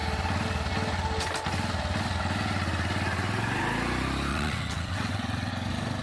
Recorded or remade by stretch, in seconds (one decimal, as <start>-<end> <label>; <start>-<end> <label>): 0.0-4.3 recorded; 4.3-5.5 remade; 5.5-6.0 recorded